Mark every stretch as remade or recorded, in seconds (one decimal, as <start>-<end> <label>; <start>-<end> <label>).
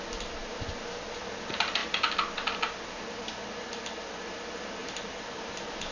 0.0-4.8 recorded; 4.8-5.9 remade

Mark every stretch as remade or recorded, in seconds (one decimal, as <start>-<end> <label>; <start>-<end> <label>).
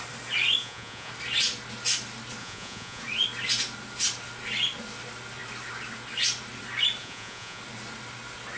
0.0-0.6 recorded; 0.6-1.1 remade; 1.1-2.4 recorded; 2.4-3.0 remade; 3.0-7.0 recorded; 7.0-7.6 remade; 7.6-8.6 recorded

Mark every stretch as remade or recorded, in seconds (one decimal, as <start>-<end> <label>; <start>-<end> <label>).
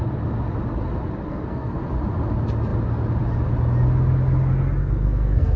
0.0-1.3 recorded; 1.3-1.8 remade; 1.8-4.8 recorded; 4.8-5.6 remade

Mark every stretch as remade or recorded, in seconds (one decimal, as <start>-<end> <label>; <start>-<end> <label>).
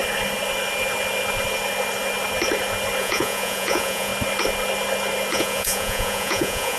0.0-3.0 recorded; 3.0-4.1 remade; 4.1-5.3 recorded; 5.3-6.8 remade